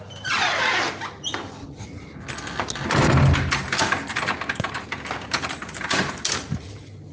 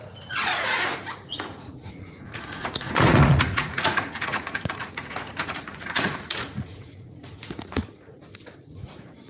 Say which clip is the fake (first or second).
second